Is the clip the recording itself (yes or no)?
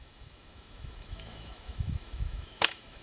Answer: no